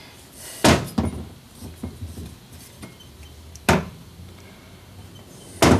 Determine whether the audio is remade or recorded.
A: recorded